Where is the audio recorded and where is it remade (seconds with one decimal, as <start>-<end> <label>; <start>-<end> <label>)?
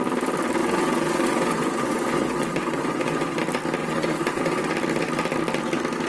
0.0-0.6 recorded; 0.6-3.4 remade; 3.4-3.8 recorded; 3.8-4.7 remade; 4.7-6.1 recorded